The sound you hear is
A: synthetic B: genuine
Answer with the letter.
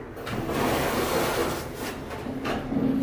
B